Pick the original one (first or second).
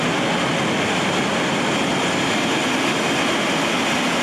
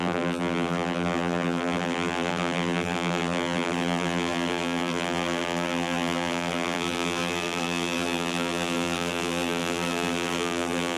first